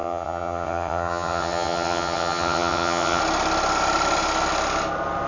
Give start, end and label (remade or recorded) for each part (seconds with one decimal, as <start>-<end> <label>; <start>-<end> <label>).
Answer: 0.0-3.2 remade; 3.2-5.3 recorded